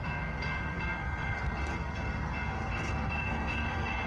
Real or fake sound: fake